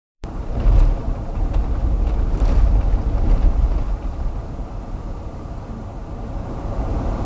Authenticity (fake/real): fake